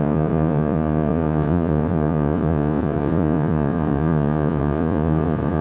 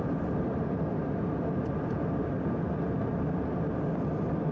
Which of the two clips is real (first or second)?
second